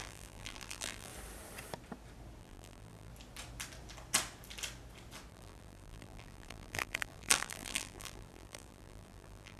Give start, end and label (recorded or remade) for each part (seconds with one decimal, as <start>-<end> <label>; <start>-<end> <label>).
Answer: 0.0-1.1 remade; 1.1-2.4 recorded; 2.4-3.1 remade; 3.1-5.3 recorded; 5.3-9.6 remade